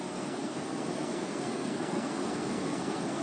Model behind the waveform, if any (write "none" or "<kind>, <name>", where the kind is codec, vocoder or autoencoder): codec, SNAC